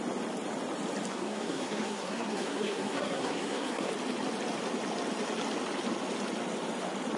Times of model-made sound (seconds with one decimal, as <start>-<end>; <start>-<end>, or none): 1.1-3.9